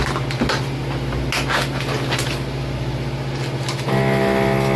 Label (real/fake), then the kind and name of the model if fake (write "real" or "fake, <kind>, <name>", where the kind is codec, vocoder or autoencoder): real